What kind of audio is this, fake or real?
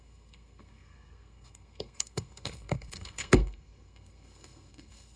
fake